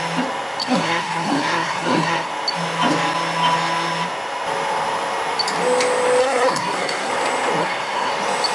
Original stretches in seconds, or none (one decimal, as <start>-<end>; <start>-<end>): 0.0-0.6; 2.3-6.2; 7.1-7.6; 8.1-8.5